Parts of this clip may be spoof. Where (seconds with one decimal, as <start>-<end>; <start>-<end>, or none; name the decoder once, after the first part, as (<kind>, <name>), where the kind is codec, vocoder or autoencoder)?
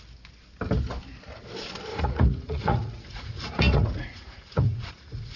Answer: 1.9-5.4 (vocoder, Vocos)